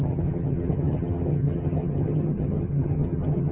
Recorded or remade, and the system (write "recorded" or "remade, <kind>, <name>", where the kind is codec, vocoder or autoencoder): remade, vocoder, HiFi-GAN